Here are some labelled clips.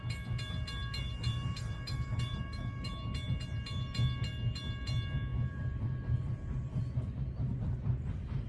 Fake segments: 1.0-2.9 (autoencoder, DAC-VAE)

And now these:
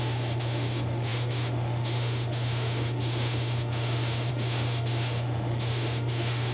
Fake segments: 0.0-6.5 (autoencoder, DAC-VAE)

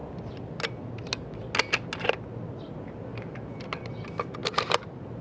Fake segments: none